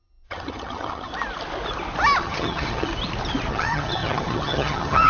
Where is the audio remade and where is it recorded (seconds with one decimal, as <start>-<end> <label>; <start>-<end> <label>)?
0.0-1.1 remade; 1.1-2.2 recorded; 2.2-2.9 remade; 2.9-3.5 recorded; 3.5-5.1 remade